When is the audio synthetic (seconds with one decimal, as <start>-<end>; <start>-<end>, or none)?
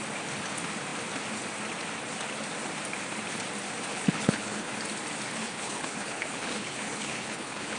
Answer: 3.9-4.7; 5.4-7.8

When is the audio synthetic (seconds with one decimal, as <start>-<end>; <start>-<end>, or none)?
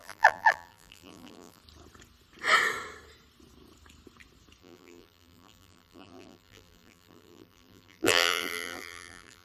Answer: 0.0-1.6; 4.6-9.4